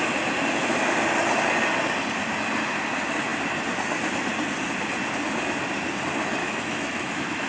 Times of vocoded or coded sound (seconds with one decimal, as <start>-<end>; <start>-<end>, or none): 6.4-7.5